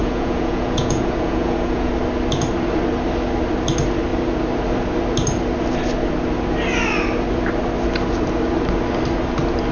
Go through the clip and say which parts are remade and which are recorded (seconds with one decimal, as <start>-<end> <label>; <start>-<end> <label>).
0.0-1.9 remade; 1.9-9.7 recorded